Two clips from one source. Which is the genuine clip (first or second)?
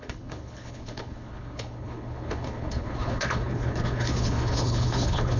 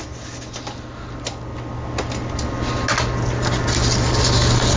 second